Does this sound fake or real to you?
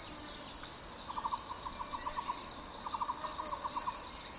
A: real